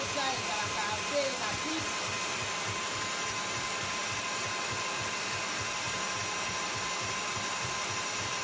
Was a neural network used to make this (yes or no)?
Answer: no